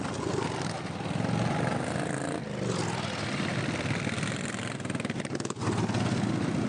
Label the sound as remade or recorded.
recorded